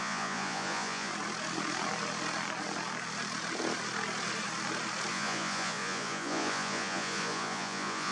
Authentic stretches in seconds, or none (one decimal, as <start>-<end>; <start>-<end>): 1.1-5.1